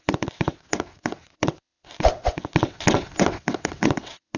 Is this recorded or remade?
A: remade